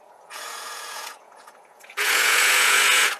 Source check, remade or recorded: remade